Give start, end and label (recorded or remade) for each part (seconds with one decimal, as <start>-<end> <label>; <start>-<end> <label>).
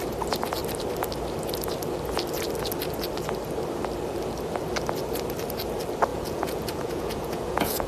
0.0-6.1 recorded; 6.1-7.9 remade